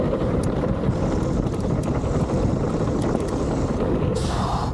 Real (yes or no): yes